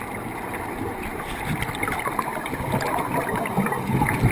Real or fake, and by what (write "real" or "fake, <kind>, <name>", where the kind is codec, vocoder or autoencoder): fake, vocoder, BigVGAN v2